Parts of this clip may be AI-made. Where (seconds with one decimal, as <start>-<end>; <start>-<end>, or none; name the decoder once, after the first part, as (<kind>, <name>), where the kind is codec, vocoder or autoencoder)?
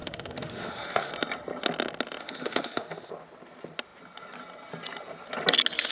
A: 0.0-1.1 (autoencoder, DAC-VAE); 2.2-3.1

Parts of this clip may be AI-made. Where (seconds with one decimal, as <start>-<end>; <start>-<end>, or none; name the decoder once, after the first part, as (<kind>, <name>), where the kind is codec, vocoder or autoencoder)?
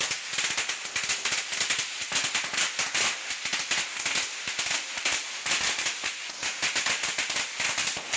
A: none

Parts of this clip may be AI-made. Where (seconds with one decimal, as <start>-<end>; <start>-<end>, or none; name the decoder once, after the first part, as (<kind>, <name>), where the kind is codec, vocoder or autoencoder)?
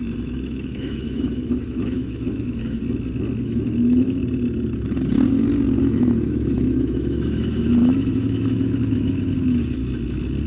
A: 0.0-2.8 (autoencoder, DAC-VAE); 3.4-4.2; 5.8-9.8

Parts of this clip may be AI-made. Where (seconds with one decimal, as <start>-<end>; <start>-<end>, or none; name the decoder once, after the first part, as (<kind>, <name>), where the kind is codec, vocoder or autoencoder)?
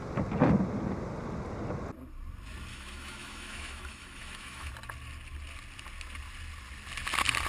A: 2.7-4.7 (autoencoder, DAC-VAE)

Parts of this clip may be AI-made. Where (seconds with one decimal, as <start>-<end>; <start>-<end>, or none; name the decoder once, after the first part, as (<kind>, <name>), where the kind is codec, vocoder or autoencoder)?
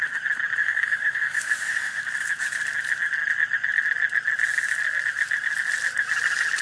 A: 0.6-2.0 (autoencoder, DAC-VAE)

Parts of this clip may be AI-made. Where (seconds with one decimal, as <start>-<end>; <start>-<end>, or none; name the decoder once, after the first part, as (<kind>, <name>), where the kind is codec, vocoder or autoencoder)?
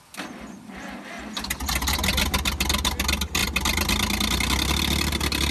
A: none